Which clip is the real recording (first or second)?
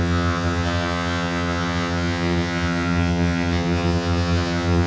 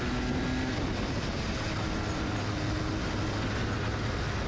second